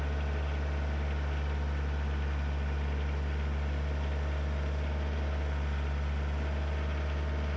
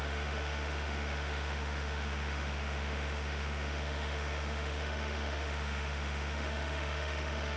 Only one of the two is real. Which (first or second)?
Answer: first